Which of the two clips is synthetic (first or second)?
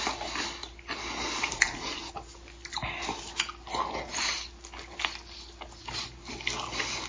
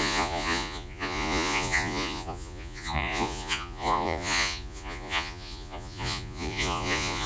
second